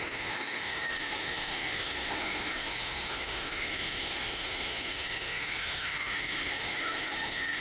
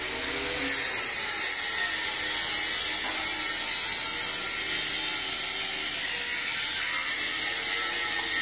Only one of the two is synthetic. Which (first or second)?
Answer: first